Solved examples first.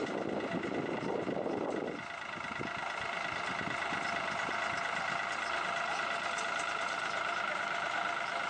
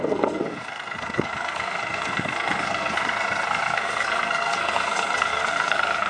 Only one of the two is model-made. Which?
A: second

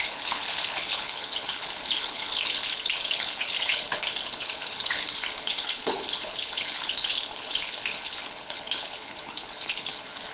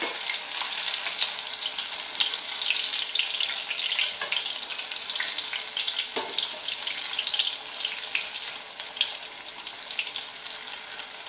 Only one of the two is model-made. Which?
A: first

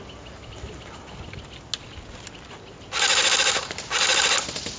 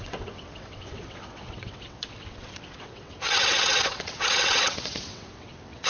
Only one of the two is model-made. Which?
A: second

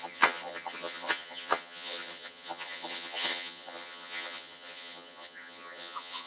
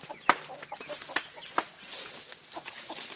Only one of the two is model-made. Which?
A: first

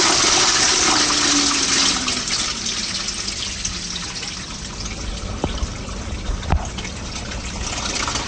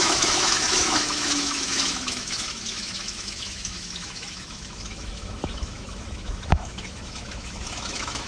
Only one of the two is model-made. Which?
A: second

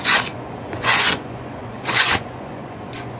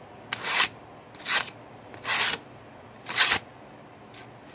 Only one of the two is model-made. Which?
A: first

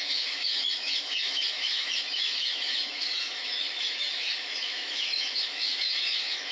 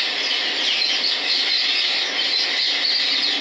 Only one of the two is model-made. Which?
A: first